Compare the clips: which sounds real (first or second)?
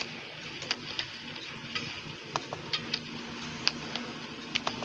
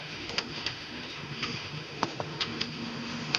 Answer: first